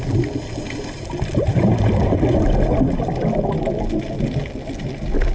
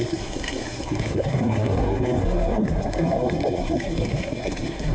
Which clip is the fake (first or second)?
second